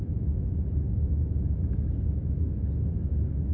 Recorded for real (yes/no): no